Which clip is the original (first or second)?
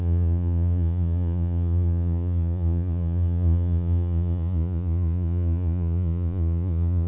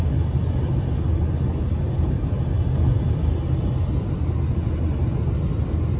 second